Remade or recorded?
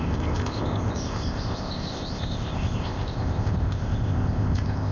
remade